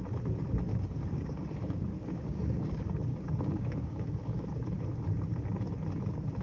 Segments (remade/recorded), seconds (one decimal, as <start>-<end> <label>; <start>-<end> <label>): 0.0-0.7 recorded; 0.7-4.5 remade; 4.5-6.4 recorded